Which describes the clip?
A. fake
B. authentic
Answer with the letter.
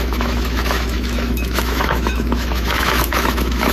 A